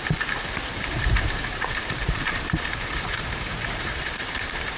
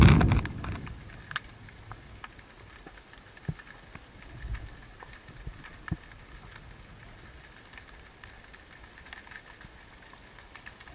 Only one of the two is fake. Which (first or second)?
first